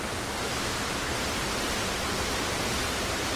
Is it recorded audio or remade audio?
remade